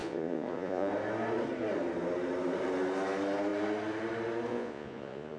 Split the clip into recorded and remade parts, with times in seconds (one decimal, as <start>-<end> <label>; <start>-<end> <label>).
0.0-0.9 remade; 0.9-4.5 recorded; 4.5-5.4 remade